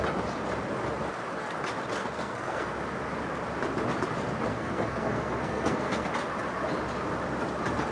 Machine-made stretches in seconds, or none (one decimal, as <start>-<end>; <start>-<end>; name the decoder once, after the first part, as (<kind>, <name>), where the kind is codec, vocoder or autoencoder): 2.0-2.7 (codec, SNAC); 4.5-6.1